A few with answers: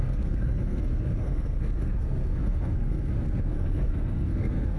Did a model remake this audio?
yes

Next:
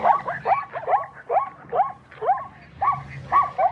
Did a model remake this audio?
no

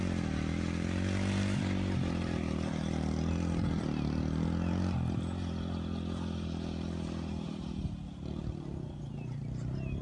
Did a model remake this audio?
no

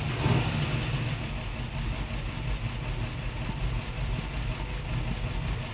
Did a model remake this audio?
no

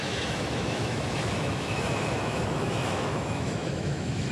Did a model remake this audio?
yes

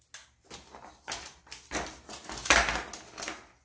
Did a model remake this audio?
no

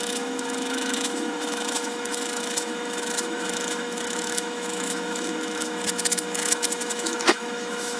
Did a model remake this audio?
yes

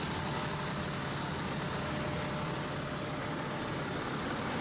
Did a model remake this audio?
no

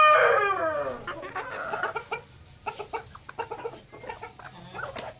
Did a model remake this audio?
no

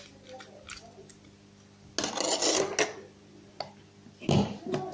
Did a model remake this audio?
no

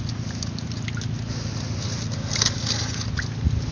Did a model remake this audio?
no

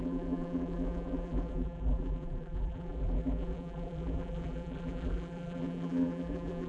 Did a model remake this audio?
yes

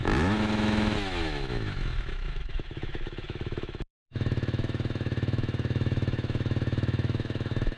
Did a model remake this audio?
yes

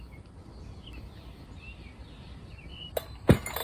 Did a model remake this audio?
yes